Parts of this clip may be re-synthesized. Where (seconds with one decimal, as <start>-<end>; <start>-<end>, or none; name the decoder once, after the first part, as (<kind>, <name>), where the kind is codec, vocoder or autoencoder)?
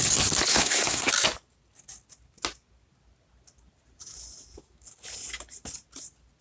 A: 0.5-1.1 (codec, SNAC)